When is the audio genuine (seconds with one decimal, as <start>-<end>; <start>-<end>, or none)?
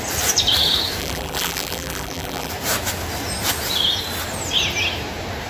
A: 0.0-1.0; 2.5-5.5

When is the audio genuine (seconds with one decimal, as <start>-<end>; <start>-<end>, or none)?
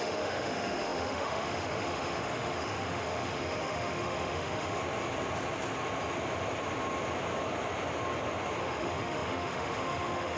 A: 4.8-8.6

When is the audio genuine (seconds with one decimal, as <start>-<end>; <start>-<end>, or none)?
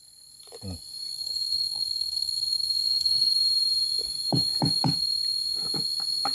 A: 0.0-1.1; 3.4-6.3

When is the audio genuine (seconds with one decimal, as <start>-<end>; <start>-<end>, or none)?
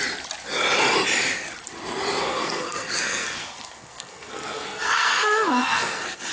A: 0.0-2.2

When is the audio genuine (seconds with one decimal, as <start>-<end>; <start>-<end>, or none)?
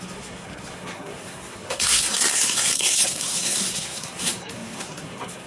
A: none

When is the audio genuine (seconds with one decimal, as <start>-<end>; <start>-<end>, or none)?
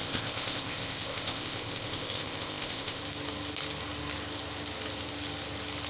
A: 3.0-5.9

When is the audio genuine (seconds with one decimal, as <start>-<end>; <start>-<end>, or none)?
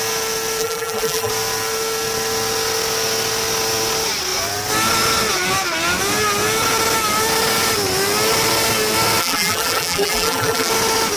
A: 0.0-0.6; 1.3-9.2; 10.7-11.2